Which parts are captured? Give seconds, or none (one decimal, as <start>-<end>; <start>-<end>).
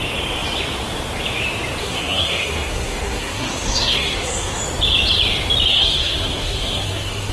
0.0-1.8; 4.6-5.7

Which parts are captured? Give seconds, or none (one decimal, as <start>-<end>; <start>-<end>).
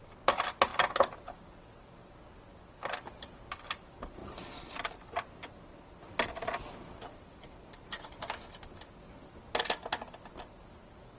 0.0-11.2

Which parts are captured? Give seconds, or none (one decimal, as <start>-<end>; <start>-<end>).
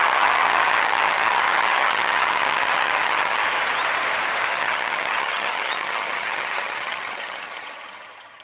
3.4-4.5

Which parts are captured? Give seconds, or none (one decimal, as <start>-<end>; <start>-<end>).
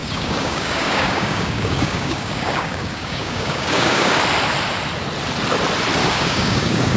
4.2-6.0